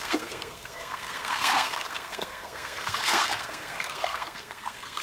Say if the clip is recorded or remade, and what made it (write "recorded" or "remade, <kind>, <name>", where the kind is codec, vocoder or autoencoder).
remade, codec, SNAC